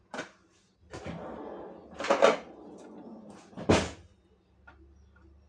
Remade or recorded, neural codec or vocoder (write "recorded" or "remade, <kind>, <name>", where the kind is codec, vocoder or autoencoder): recorded